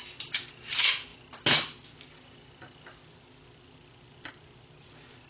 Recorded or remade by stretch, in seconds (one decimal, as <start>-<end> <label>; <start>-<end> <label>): 0.0-5.3 recorded